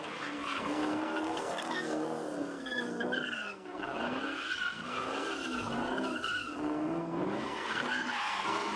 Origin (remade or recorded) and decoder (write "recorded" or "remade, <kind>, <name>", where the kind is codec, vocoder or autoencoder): remade, codec, SNAC